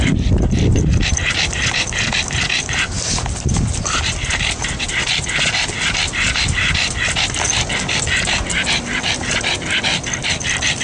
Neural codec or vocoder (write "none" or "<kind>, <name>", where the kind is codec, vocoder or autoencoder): none